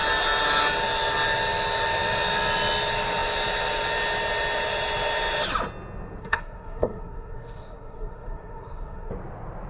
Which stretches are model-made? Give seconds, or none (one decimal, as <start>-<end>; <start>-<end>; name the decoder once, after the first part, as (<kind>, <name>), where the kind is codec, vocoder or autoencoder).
6.2-9.1 (codec, SNAC)